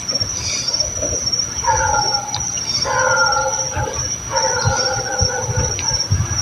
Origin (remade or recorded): recorded